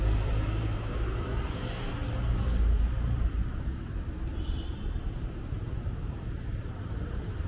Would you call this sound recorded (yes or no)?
no